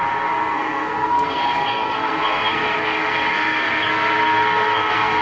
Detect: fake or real fake